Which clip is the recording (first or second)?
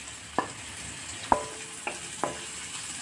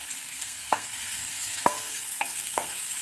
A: first